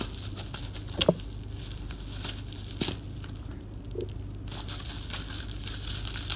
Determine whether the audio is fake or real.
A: real